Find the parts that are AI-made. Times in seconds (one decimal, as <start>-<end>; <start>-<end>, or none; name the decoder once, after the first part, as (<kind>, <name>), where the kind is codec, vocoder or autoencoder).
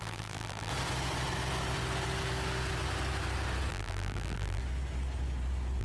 0.0-0.7 (vocoder, BigVGAN v2); 3.7-4.6